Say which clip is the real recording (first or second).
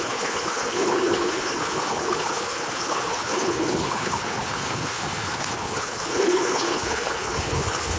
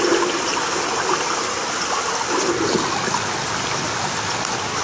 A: second